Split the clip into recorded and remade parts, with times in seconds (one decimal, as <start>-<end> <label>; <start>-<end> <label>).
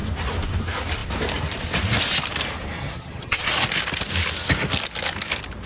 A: 0.0-2.8 recorded; 2.8-3.5 remade; 3.5-5.7 recorded